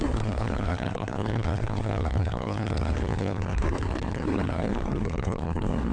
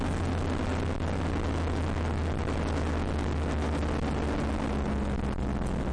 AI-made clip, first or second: first